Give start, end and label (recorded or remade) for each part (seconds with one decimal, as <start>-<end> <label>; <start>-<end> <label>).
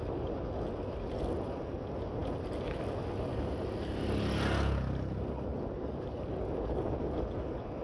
0.0-7.8 recorded